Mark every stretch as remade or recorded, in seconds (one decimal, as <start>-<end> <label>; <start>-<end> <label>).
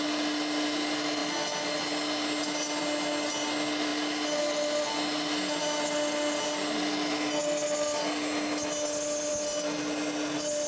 0.0-10.7 recorded